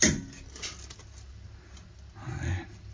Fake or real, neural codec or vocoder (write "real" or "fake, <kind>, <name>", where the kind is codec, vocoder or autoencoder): real